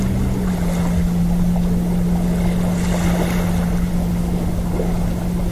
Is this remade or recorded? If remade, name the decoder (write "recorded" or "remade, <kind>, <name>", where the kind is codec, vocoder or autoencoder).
recorded